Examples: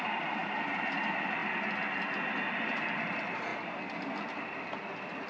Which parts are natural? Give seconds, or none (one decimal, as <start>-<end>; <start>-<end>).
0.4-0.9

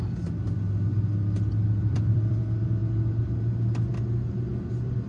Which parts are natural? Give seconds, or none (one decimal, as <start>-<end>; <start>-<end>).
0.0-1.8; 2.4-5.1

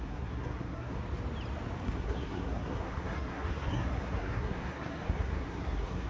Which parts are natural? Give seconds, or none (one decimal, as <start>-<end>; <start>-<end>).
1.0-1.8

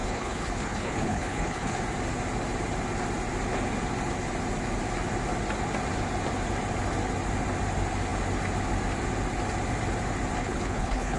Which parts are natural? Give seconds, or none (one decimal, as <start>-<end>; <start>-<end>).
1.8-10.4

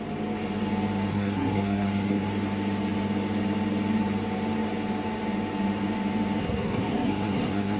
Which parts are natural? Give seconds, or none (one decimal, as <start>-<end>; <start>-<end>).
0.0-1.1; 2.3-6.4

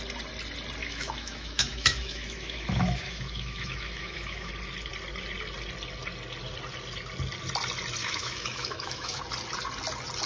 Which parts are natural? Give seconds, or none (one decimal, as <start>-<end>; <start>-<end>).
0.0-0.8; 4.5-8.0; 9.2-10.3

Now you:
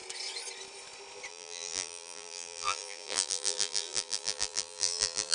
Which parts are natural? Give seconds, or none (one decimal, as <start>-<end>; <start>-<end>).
0.0-1.3